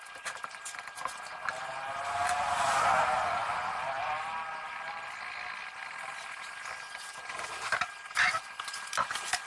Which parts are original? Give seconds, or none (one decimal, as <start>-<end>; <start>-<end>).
0.0-9.5